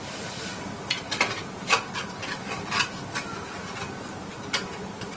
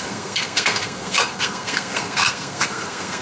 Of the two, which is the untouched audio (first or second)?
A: first